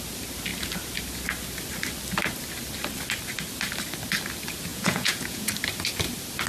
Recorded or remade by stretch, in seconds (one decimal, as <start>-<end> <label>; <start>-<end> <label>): 0.0-4.7 recorded; 4.7-5.5 remade; 5.5-6.5 recorded